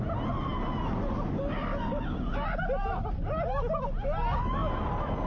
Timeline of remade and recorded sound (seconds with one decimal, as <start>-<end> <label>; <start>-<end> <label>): 0.0-5.3 recorded